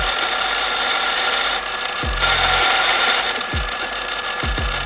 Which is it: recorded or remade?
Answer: recorded